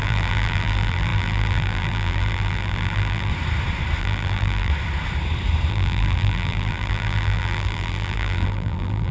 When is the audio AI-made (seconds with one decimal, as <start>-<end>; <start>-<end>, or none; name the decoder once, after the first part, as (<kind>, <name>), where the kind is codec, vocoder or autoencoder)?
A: 0.0-3.3 (vocoder, BigVGAN v2); 4.0-4.7; 5.7-9.1